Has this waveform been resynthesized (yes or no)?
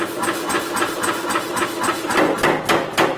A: no